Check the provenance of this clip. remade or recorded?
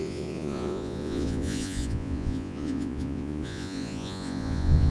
remade